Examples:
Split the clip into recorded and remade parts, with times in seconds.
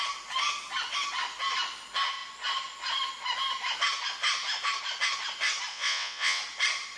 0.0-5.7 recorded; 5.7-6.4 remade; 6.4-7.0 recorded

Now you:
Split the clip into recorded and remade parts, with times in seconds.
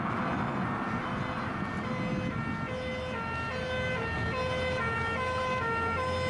0.0-6.3 recorded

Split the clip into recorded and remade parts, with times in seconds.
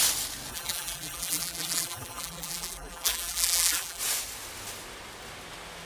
0.0-0.5 recorded; 0.5-4.0 remade; 4.0-5.9 recorded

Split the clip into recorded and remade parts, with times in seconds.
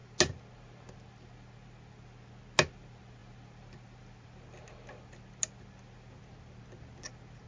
0.0-7.5 recorded